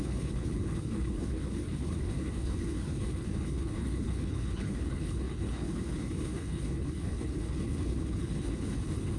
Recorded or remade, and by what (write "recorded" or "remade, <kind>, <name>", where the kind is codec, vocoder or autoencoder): remade, codec, HILCodec